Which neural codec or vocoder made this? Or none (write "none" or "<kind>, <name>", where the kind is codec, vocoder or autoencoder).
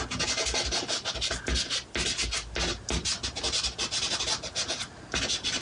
none